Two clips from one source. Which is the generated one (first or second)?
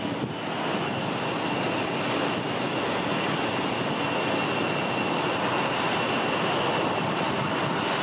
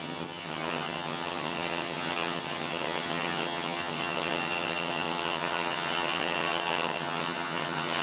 second